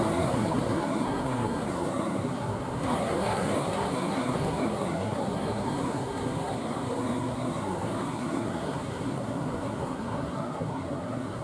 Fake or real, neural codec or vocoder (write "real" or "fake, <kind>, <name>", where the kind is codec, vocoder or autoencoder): fake, codec, SNAC